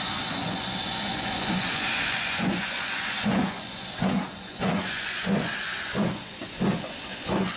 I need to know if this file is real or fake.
fake